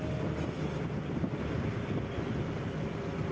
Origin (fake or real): real